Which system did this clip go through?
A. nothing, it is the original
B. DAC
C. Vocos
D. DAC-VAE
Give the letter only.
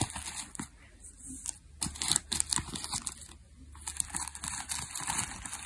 A